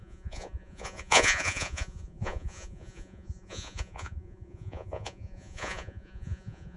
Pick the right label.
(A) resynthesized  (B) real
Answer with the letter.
A